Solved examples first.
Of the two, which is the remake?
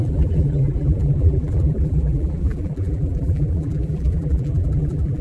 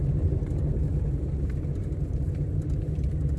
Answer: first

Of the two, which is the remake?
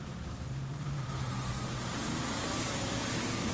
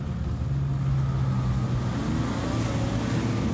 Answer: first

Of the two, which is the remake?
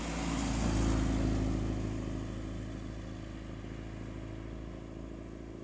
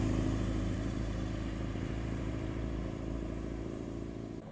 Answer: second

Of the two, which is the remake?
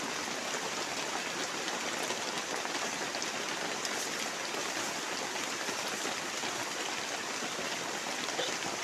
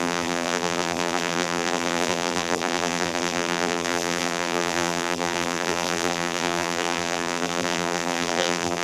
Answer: second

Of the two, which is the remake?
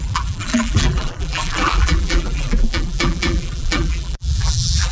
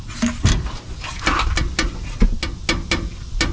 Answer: first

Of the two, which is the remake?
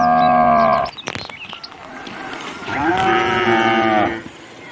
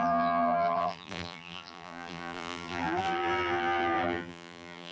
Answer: second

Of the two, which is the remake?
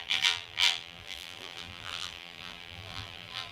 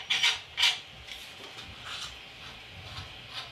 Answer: first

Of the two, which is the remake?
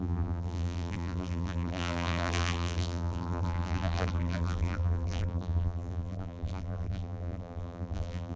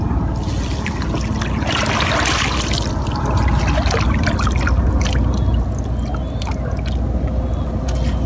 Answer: first